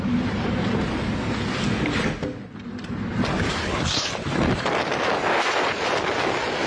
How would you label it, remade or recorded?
recorded